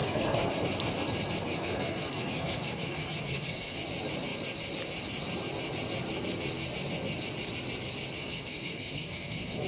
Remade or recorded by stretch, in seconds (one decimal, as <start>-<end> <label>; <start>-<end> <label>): 0.0-0.5 remade; 0.5-1.4 recorded; 1.4-3.8 remade; 3.8-8.2 recorded; 8.2-9.7 remade